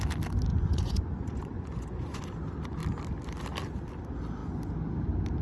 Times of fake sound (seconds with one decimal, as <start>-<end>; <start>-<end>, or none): 0.5-2.2